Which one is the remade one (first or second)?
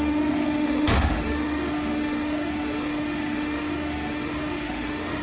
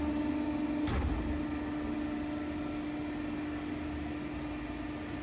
first